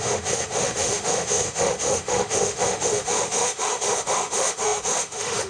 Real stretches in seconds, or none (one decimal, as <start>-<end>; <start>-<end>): none